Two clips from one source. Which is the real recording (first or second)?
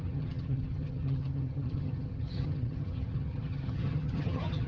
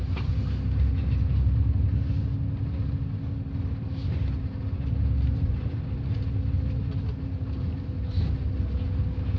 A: second